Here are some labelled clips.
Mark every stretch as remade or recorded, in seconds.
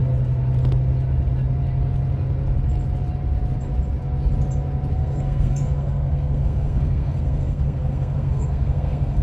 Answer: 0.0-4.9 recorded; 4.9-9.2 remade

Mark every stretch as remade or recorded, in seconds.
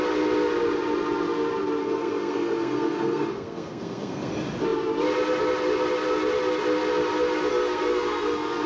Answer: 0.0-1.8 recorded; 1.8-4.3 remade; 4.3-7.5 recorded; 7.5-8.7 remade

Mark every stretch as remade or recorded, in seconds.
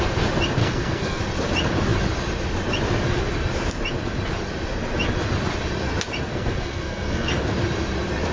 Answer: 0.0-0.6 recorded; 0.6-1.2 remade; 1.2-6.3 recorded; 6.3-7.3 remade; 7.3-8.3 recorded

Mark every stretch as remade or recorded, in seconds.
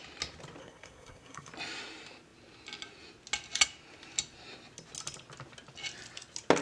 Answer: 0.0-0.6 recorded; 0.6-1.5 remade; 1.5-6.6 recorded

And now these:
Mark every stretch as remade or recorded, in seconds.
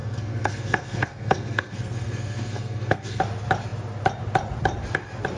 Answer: 0.0-3.2 remade; 3.2-5.4 recorded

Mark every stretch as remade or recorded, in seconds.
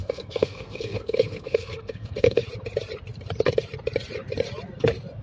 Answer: 0.0-2.4 remade; 2.4-5.2 recorded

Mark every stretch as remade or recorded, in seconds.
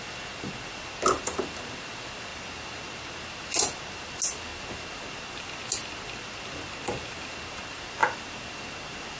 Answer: 0.0-9.2 recorded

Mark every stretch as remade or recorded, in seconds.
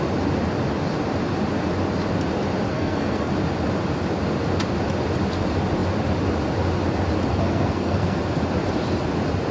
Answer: 0.0-2.7 recorded; 2.7-3.3 remade; 3.3-7.3 recorded; 7.3-8.2 remade; 8.2-9.5 recorded